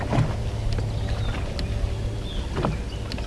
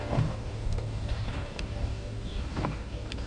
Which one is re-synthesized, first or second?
second